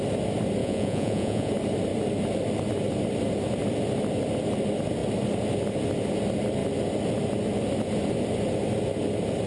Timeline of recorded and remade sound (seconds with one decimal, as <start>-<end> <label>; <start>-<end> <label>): 0.0-0.6 recorded; 0.6-1.5 remade; 1.5-9.5 recorded